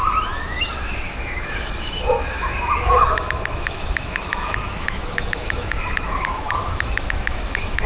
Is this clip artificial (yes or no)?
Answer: yes